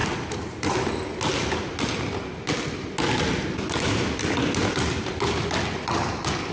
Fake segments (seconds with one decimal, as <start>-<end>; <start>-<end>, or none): none